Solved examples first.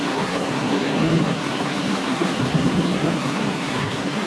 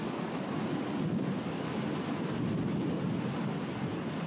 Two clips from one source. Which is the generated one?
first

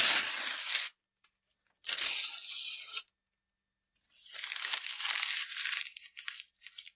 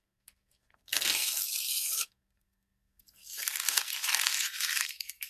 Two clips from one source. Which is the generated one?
second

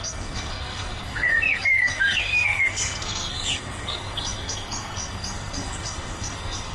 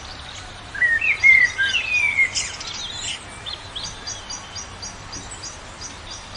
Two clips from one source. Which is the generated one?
first